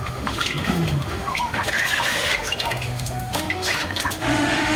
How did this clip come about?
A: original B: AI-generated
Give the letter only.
B